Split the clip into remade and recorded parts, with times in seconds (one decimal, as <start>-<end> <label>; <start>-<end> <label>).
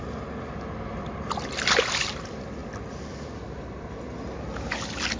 0.0-2.6 recorded; 2.6-4.0 remade; 4.0-5.2 recorded